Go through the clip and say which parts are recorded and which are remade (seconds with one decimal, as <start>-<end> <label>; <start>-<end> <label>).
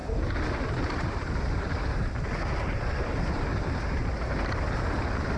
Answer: 0.0-5.4 recorded